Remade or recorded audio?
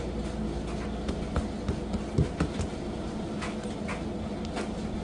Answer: recorded